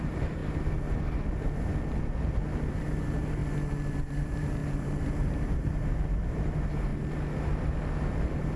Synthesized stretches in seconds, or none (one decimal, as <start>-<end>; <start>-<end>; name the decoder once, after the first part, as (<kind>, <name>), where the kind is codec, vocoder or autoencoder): 0.0-0.4 (vocoder, BigVGAN v2); 2.7-3.4; 4.0-6.9; 8.2-8.6